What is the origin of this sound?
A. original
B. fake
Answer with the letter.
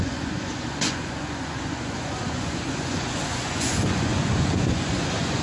B